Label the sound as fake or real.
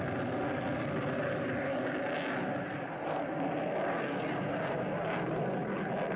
real